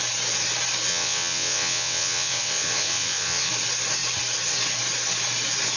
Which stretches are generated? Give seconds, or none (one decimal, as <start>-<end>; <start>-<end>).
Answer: 0.9-3.5